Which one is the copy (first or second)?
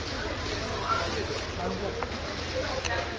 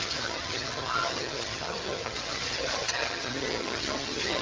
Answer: second